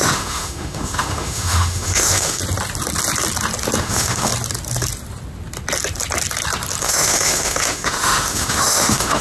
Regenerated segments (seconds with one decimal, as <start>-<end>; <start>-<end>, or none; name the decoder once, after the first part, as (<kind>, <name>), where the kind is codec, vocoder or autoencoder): 0.0-2.4 (autoencoder, DAC-VAE); 3.8-4.3; 6.8-9.2